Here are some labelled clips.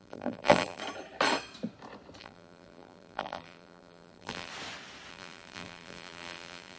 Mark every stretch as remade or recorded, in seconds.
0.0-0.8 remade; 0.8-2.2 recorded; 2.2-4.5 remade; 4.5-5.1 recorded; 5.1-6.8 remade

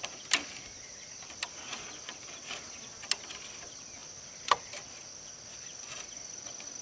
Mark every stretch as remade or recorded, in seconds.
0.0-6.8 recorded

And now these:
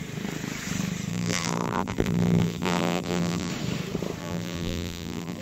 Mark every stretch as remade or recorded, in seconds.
0.0-1.1 recorded; 1.1-3.5 remade; 3.5-4.2 recorded; 4.2-5.4 remade